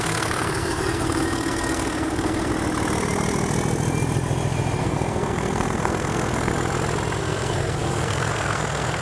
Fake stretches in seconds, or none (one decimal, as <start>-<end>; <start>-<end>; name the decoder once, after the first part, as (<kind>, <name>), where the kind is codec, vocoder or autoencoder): 0.0-2.5 (codec, SNAC); 4.8-6.5; 7.2-9.0